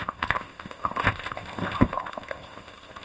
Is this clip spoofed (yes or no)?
yes